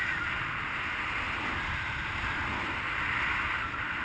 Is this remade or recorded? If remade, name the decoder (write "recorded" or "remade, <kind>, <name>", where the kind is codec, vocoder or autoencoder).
recorded